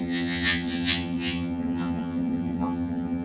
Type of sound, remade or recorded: remade